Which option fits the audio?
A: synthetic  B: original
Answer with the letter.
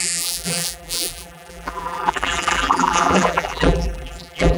A